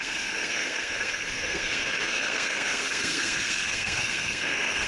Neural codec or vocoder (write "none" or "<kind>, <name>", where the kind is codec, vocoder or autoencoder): codec, SNAC